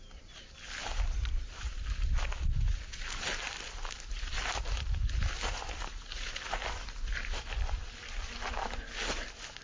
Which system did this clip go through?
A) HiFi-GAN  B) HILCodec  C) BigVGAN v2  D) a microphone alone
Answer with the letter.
C